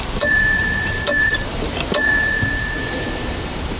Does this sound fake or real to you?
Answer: fake